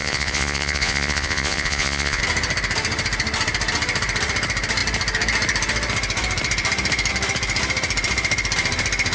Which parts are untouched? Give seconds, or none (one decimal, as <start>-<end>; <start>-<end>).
2.2-9.1